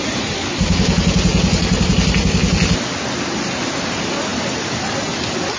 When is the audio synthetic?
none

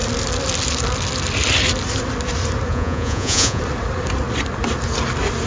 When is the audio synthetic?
2.7-3.6 (vocoder, Vocos)